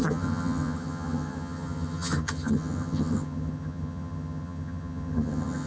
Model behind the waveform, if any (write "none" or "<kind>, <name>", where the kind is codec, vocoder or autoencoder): vocoder, HiFi-GAN